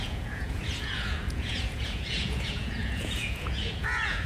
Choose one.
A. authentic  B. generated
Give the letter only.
B